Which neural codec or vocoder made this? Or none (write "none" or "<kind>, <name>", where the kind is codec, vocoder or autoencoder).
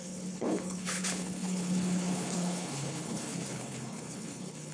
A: codec, HILCodec